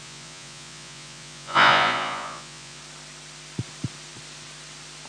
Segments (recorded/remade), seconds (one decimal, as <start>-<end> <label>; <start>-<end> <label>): 0.0-2.8 remade; 2.8-5.1 recorded